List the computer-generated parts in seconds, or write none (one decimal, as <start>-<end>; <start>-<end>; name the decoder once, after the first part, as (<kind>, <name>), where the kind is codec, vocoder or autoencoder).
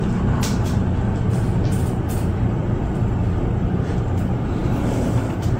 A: 0.0-0.8 (vocoder, BigVGAN v2); 3.9-5.6